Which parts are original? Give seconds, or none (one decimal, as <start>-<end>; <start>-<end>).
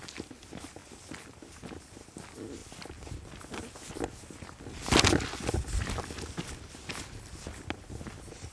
0.0-8.5